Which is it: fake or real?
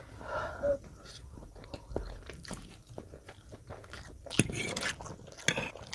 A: real